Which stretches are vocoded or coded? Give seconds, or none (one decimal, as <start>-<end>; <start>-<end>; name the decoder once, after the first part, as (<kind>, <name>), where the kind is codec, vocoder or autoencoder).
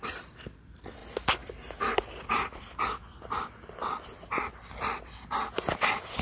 none